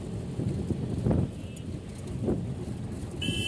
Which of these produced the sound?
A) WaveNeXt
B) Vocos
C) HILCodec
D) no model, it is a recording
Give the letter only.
D